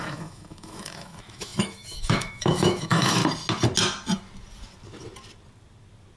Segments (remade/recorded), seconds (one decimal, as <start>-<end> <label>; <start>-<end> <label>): 0.0-3.2 remade; 3.2-6.2 recorded